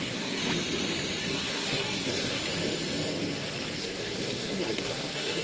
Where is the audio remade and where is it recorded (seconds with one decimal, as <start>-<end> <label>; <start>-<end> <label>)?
0.0-0.4 remade; 0.4-1.2 recorded; 1.2-2.4 remade; 2.4-3.8 recorded; 3.8-5.4 remade